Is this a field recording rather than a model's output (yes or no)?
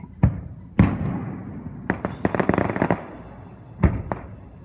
yes